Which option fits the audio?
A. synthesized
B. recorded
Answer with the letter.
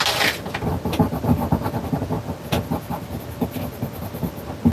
B